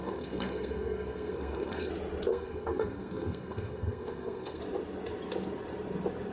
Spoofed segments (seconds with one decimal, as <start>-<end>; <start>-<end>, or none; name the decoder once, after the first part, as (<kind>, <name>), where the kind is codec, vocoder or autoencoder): 0.0-1.9 (codec, SNAC); 2.3-4.6